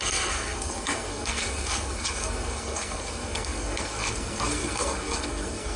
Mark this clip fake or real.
fake